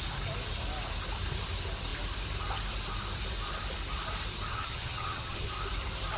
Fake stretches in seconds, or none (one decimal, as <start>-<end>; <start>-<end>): 4.5-5.5